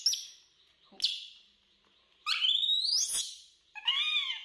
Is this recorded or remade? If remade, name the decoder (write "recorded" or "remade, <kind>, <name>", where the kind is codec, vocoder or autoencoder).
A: recorded